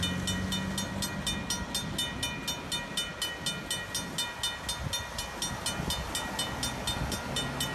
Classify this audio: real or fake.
real